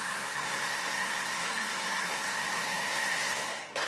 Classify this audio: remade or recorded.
remade